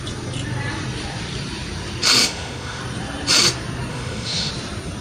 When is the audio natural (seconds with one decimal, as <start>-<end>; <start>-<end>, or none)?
0.0-2.2; 2.8-3.9; 4.5-5.0

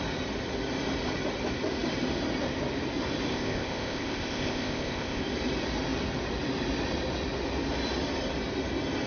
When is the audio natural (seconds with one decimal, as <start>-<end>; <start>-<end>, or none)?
0.0-3.3; 5.2-9.1

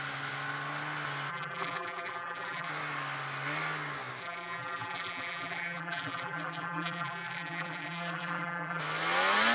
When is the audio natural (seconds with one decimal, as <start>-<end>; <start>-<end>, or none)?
0.0-1.3; 2.7-4.2; 8.8-9.5

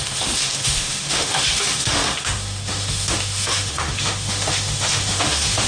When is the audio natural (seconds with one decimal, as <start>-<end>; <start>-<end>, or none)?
none

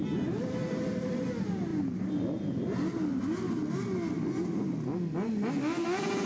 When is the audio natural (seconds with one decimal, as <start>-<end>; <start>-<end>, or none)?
0.0-6.3